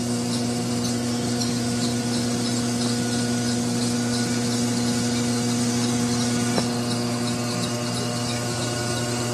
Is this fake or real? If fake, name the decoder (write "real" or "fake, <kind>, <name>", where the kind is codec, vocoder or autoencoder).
real